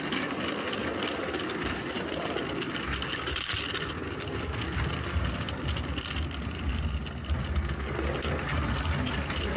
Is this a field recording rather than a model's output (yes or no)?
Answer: yes